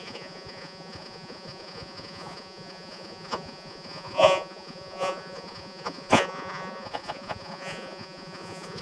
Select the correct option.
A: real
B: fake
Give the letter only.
B